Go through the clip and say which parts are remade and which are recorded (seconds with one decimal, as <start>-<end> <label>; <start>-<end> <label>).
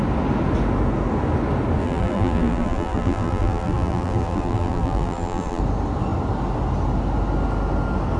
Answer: 0.0-1.8 recorded; 1.8-5.6 remade; 5.6-8.2 recorded